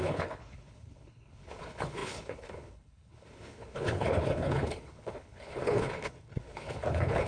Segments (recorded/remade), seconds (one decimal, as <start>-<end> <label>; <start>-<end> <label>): 0.0-7.3 remade